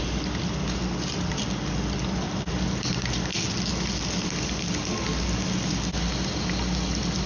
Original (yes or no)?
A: yes